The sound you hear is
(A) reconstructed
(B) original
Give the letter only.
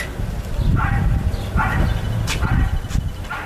B